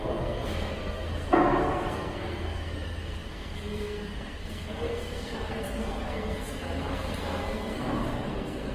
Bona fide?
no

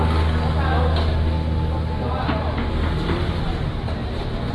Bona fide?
yes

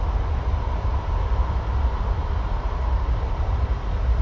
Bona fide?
yes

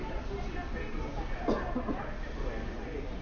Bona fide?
yes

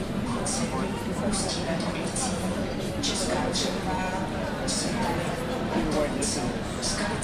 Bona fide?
no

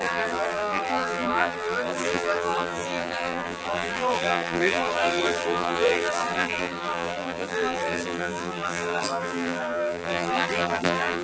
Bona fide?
no